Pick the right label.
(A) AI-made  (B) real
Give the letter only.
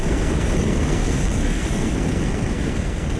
A